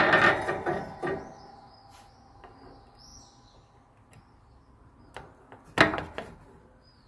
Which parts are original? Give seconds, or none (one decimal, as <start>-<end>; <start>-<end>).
0.0-7.1